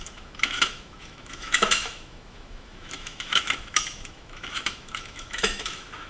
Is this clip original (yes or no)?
no